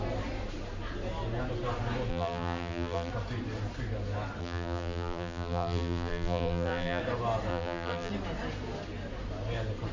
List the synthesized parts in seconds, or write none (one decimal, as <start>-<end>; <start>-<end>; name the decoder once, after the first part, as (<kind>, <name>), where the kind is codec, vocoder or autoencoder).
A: 2.1-3.1 (vocoder, BigVGAN v2); 4.4-7.0; 7.5-8.1

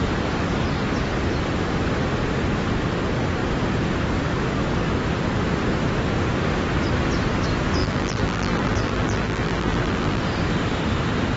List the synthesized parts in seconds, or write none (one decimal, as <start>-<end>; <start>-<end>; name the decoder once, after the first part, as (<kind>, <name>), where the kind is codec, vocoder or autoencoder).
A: 7.8-10.2 (vocoder, BigVGAN v2)